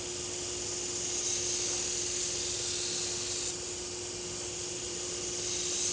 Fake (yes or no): no